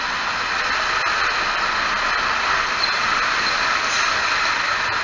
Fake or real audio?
real